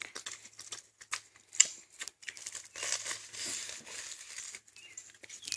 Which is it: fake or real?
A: real